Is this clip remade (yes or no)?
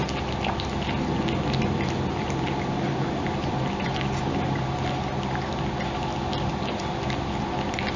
no